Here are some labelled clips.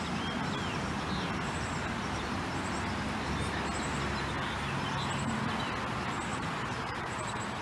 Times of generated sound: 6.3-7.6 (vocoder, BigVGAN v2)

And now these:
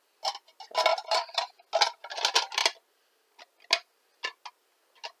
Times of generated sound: 0.9-1.5 (vocoder, BigVGAN v2)

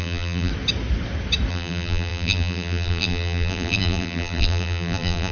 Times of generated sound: 0.0-0.5 (vocoder, BigVGAN v2); 1.5-5.3

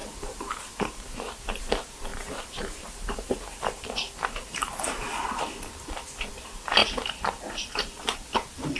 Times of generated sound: 0.0-1.0 (vocoder, BigVGAN v2); 2.1-4.8; 6.8-8.0

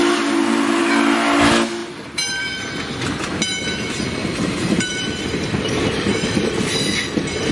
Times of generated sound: 1.8-2.6 (vocoder, BigVGAN v2); 4.2-6.5

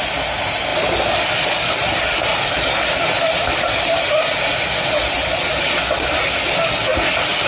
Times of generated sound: 2.3-4.1 (vocoder, BigVGAN v2)

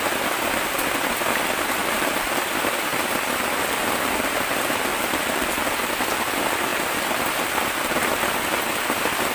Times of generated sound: 1.8-2.3 (vocoder, BigVGAN v2); 4.9-5.9

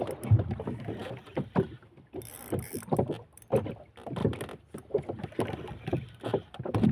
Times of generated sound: 1.0-3.6 (vocoder, BigVGAN v2); 4.2-4.9; 5.9-6.9